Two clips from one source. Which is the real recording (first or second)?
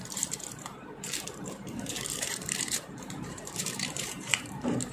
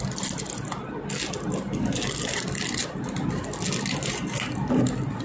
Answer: second